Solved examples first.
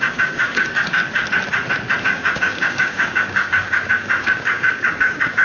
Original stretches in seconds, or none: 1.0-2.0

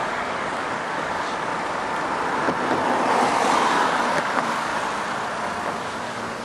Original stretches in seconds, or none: 1.5-4.2; 4.7-5.8

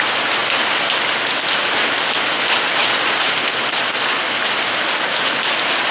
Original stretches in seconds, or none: 0.0-5.9